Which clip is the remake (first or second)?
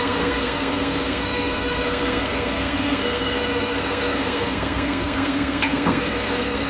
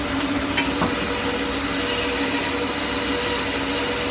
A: first